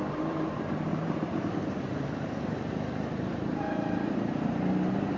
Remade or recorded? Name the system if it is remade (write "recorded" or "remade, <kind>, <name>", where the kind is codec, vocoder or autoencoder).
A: remade, vocoder, BigVGAN v2